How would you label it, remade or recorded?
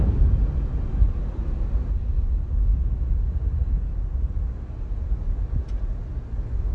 recorded